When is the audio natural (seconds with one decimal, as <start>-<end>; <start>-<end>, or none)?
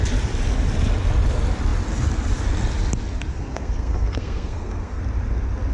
0.0-3.3; 5.0-5.7